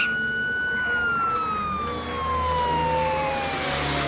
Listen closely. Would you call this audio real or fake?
real